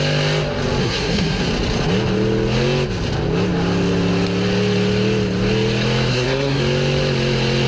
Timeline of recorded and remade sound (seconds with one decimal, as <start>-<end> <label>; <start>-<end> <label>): 0.0-0.8 recorded; 0.8-1.4 remade; 1.4-6.1 recorded; 6.1-6.6 remade; 6.6-7.7 recorded

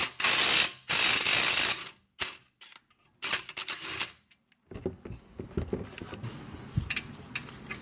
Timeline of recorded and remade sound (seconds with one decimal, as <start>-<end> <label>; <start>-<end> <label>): 0.0-7.8 recorded

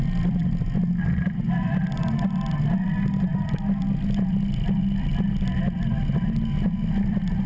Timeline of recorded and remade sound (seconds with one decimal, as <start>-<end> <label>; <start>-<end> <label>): 0.0-7.5 recorded